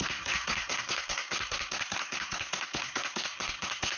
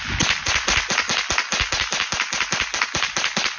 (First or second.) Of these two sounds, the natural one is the second